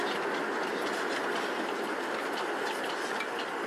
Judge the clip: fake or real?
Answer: real